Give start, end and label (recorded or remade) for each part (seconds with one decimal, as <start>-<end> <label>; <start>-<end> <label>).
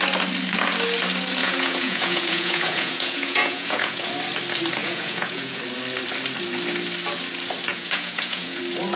0.0-1.4 recorded; 1.4-4.1 remade; 4.1-4.8 recorded; 4.8-5.6 remade; 5.6-7.7 recorded; 7.7-8.6 remade; 8.6-9.0 recorded